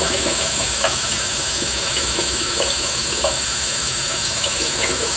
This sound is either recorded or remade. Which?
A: remade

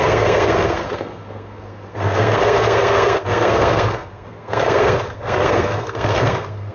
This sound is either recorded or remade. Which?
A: remade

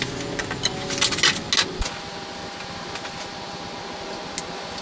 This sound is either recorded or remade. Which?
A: recorded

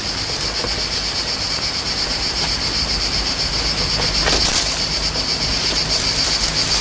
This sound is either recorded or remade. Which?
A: recorded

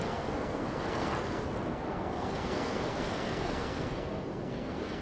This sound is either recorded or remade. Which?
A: remade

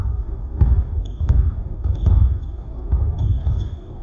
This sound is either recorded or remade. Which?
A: remade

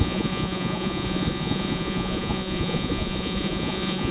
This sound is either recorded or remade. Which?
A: remade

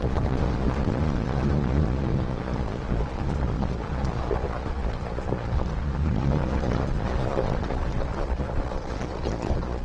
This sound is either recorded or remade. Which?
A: remade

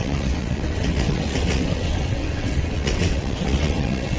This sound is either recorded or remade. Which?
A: remade